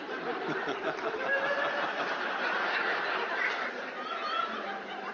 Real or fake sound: real